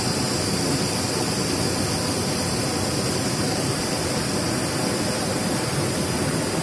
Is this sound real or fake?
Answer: real